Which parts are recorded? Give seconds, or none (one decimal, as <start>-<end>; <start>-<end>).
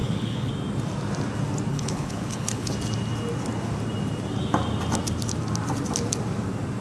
0.5-1.7; 2.7-6.8